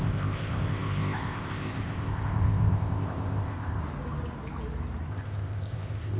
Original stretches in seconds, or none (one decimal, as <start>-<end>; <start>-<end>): 3.8-5.1